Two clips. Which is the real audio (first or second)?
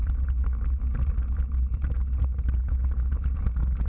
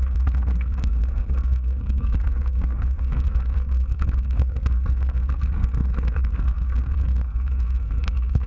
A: first